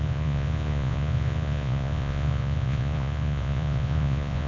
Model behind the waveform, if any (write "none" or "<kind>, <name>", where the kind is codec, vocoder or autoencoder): vocoder, Vocos